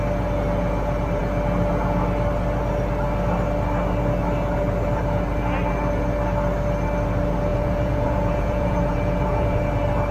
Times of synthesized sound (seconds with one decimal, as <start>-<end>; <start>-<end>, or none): 7.5-9.6